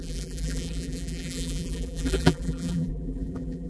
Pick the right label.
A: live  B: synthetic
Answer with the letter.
B